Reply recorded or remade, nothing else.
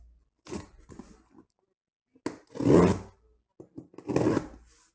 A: recorded